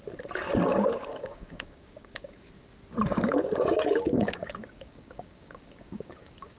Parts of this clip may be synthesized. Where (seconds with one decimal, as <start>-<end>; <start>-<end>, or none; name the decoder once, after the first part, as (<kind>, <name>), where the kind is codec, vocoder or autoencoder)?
0.7-2.5 (codec, DAC); 3.1-6.6

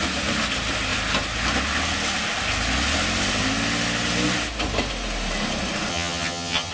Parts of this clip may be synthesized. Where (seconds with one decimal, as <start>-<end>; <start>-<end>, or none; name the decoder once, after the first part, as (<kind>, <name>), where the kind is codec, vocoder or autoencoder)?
5.9-6.7 (vocoder, HiFi-GAN)

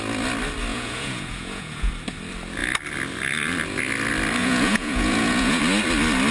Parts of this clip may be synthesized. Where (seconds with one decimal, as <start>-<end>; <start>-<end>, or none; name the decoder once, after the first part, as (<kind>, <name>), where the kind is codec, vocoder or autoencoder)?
0.7-1.9 (vocoder, Vocos); 4.4-5.6

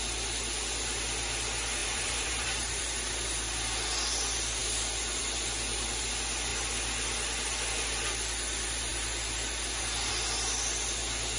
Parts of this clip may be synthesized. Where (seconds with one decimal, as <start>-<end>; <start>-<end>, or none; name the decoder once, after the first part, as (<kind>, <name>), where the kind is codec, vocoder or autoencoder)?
1.8-2.8 (vocoder, BigVGAN v2)

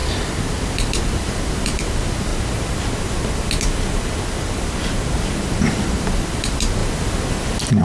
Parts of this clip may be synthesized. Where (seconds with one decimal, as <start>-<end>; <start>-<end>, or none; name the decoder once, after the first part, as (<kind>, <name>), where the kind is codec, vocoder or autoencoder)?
0.0-2.3 (vocoder, BigVGAN v2); 5.5-6.8